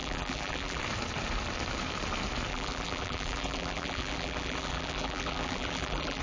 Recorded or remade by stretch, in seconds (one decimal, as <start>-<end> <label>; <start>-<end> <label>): 0.0-0.8 remade; 0.8-2.5 recorded; 2.5-6.2 remade